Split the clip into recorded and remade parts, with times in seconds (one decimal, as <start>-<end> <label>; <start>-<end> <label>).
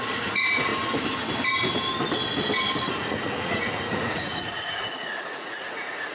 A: 0.0-0.7 remade; 0.7-2.9 recorded; 2.9-6.1 remade